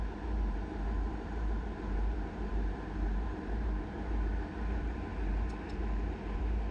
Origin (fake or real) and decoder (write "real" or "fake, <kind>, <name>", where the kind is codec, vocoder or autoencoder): fake, vocoder, BigVGAN v2